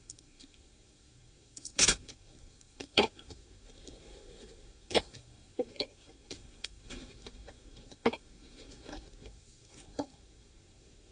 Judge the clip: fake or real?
fake